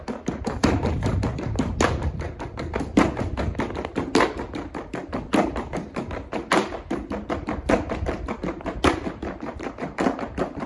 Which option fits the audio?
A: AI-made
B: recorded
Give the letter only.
B